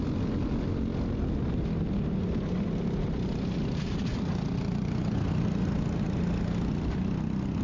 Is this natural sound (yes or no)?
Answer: yes